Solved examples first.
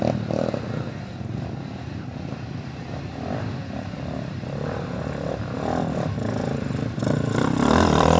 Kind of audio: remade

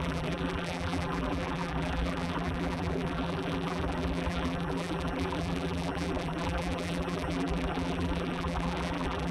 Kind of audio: remade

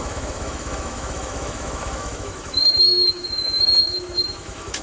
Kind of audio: remade